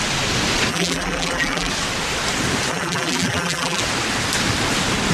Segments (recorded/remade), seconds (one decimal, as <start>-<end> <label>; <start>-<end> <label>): 0.0-0.7 recorded; 0.7-1.7 remade; 1.7-2.7 recorded; 2.7-3.8 remade; 3.8-5.1 recorded